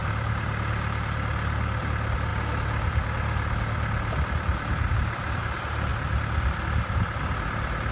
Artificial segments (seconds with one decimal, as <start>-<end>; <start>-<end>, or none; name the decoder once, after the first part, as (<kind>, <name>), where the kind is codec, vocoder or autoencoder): 0.0-1.8 (vocoder, BigVGAN v2)